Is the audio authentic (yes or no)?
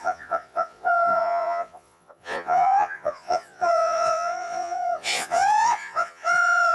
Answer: no